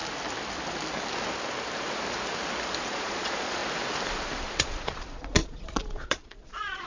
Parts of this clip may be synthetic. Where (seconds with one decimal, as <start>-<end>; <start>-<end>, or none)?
2.8-3.6; 4.5-6.9